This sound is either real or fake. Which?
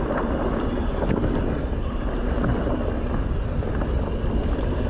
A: real